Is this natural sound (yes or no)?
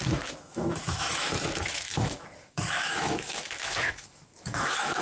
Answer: no